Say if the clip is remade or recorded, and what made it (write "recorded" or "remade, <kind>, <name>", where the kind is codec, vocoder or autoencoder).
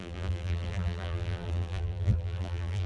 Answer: remade, vocoder, BigVGAN v2